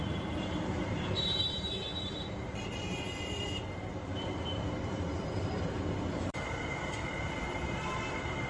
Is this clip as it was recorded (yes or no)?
no